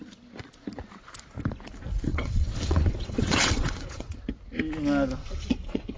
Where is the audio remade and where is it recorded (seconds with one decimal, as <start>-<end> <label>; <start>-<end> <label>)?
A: 0.0-2.1 recorded; 2.1-4.2 remade; 4.2-5.2 recorded; 5.2-6.0 remade